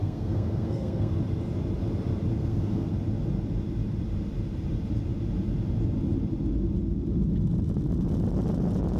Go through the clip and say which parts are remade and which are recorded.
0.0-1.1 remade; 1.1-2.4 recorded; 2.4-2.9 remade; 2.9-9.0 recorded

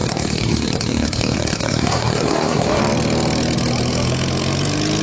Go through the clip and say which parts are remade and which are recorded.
0.0-2.8 remade; 2.8-5.0 recorded